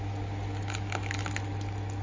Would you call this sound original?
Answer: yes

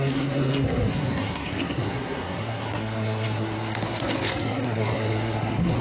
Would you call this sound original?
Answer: no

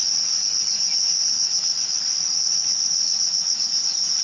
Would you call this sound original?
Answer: yes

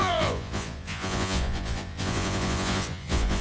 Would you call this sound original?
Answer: no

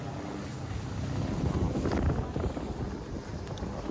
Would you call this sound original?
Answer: yes